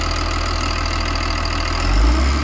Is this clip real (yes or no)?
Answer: yes